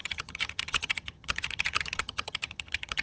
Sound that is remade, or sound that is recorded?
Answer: remade